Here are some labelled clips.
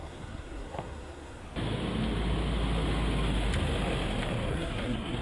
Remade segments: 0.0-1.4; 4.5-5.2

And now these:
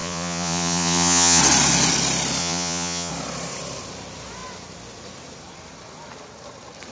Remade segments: 0.0-1.4; 2.4-3.1